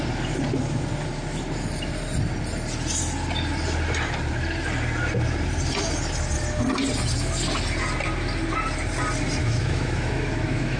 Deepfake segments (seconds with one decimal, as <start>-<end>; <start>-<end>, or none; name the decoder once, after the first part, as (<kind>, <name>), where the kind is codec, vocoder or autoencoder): 9.4-10.8 (autoencoder, DAC-VAE)